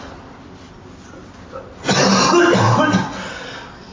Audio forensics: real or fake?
real